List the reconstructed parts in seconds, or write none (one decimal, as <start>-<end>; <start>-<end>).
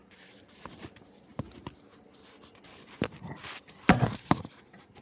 none